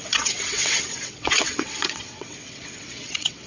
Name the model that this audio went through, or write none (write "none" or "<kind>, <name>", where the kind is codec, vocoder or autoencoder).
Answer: vocoder, WaveNeXt